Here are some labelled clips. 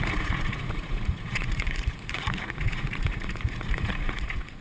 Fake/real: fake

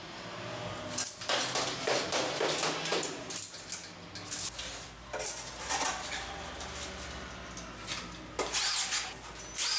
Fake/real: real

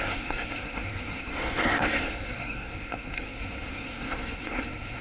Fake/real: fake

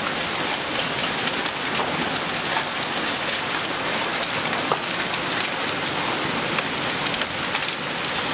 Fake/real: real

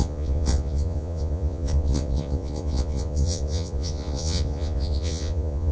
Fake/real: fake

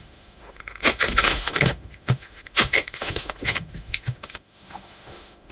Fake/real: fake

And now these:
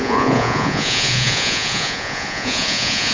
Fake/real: fake